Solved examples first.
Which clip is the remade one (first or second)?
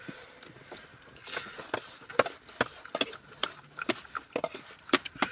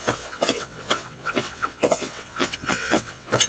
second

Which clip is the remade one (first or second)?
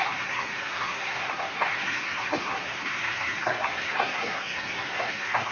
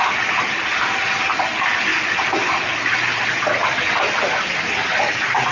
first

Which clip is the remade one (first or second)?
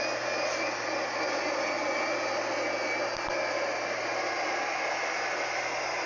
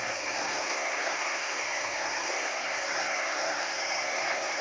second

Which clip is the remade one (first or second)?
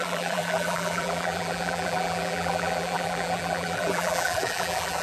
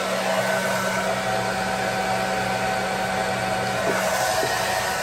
first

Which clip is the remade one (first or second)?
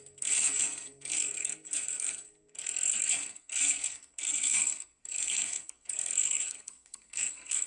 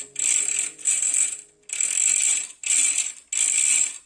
first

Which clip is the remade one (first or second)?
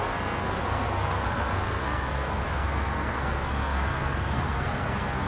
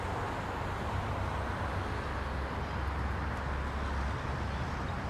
first